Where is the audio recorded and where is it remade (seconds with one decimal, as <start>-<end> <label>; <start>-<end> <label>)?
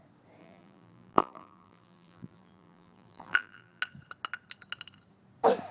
0.0-0.4 recorded; 0.4-3.8 remade; 3.8-5.7 recorded